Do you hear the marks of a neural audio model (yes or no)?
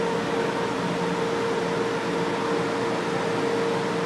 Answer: no